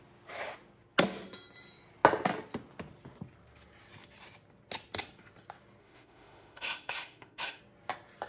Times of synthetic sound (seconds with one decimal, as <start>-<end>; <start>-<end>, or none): 5.8-7.6